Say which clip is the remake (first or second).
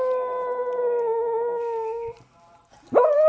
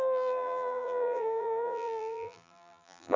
second